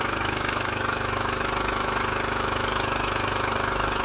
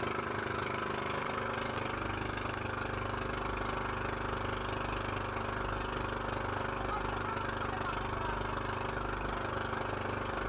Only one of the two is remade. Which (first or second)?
first